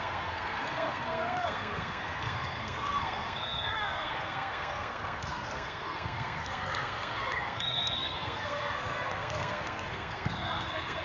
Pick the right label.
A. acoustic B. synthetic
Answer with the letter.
B